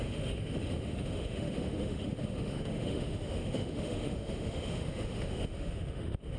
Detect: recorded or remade remade